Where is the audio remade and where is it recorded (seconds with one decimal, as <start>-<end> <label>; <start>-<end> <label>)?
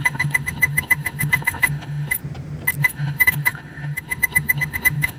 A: 0.0-2.2 remade; 2.2-2.8 recorded; 2.8-5.2 remade